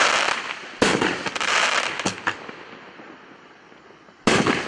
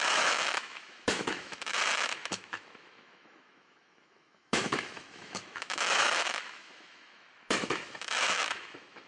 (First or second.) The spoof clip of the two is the second